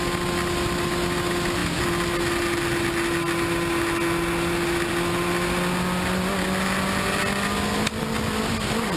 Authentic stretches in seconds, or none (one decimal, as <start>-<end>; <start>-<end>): 0.0-9.0